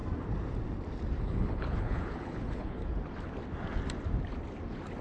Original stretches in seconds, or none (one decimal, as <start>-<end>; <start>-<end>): 0.0-1.2; 2.8-5.0